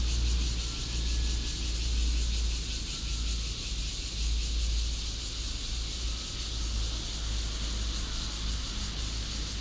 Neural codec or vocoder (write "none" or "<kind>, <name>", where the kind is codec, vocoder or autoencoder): none